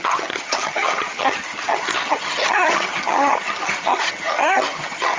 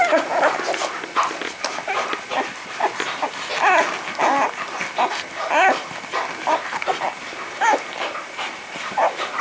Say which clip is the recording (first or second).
second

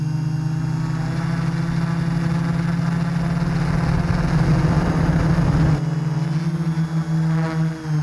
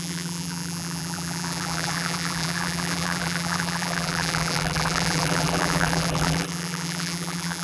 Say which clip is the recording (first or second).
first